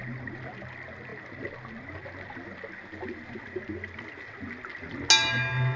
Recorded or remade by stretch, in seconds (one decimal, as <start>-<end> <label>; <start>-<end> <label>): 0.0-5.8 recorded